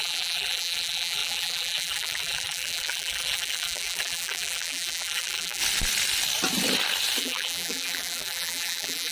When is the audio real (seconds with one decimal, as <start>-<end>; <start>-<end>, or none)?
5.6-7.2